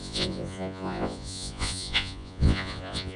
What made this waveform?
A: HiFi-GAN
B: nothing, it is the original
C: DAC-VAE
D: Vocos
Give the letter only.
D